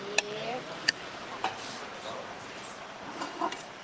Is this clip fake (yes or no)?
yes